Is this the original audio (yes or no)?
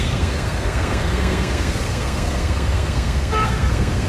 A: no